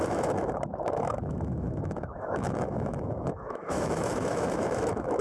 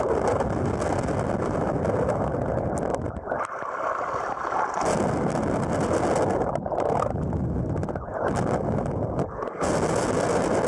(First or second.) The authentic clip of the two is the second